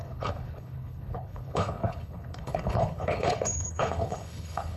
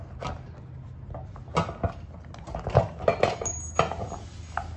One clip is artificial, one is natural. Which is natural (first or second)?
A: second